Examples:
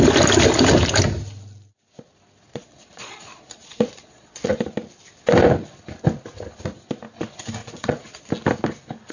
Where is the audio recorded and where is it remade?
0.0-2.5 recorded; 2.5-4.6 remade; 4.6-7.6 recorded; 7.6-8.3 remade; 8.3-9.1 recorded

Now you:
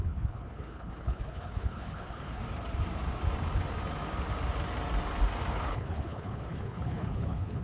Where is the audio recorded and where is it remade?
0.0-2.4 remade; 2.4-5.5 recorded; 5.5-7.6 remade

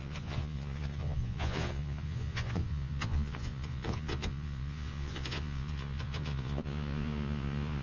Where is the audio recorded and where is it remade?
0.0-7.8 remade

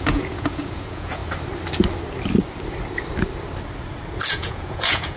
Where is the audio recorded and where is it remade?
0.0-1.2 remade; 1.2-4.3 recorded; 4.3-5.2 remade

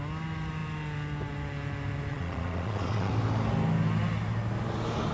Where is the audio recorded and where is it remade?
0.0-2.1 recorded; 2.1-3.1 remade; 3.1-5.1 recorded

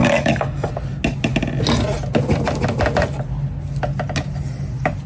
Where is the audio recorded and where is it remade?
0.0-0.7 remade; 0.7-5.1 recorded

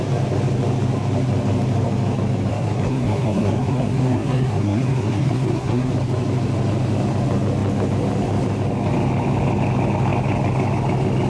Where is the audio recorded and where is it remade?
0.0-2.5 recorded; 2.5-5.9 remade; 5.9-11.3 recorded